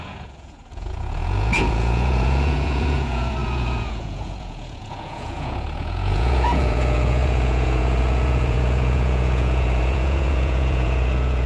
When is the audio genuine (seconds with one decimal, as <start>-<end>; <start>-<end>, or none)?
none

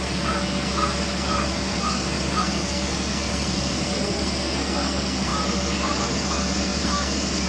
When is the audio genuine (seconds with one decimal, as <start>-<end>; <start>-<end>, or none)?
none

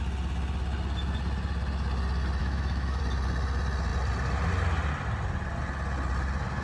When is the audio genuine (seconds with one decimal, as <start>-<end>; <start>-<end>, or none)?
0.0-2.4; 3.0-6.6

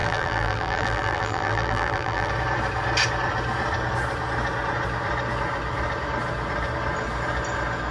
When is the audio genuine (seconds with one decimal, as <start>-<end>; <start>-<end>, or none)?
2.3-7.9

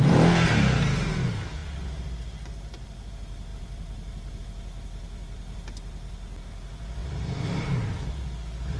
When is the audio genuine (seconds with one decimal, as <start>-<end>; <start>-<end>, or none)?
0.0-1.6; 3.1-3.5; 4.4-8.8

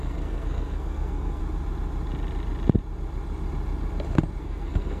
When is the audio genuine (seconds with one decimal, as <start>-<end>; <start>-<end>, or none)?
1.4-4.4

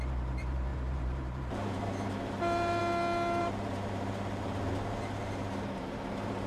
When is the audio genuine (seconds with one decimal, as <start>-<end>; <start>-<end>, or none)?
2.8-3.4